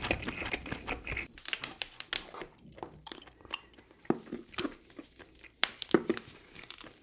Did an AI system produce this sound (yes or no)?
no